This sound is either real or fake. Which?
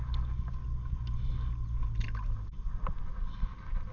real